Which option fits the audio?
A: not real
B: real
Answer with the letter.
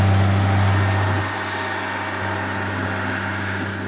B